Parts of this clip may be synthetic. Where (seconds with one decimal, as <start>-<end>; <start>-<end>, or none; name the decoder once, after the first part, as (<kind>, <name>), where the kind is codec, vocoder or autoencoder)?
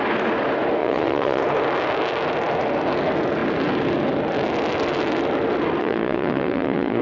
0.8-1.4 (vocoder, Vocos); 5.8-7.0